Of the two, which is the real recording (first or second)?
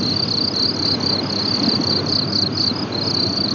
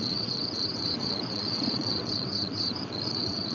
first